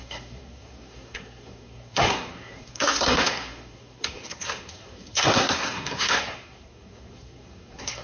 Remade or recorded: remade